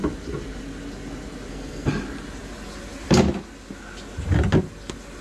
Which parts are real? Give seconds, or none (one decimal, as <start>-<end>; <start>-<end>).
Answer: 0.0-1.5; 1.9-5.2